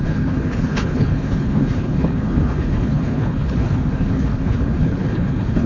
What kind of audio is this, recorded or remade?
remade